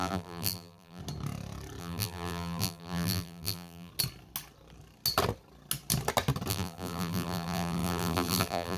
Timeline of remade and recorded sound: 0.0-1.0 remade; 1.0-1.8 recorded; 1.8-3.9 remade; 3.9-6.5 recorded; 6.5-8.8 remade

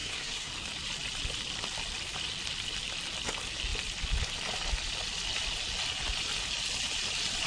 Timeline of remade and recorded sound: 0.0-0.5 remade; 0.5-7.5 recorded

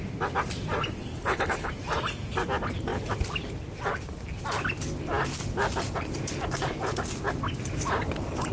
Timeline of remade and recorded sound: 0.0-1.1 recorded; 1.1-1.7 remade; 1.7-8.5 recorded